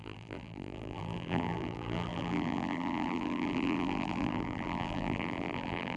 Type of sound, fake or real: fake